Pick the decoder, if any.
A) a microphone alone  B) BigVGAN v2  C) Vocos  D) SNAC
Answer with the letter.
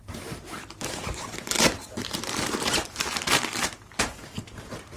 B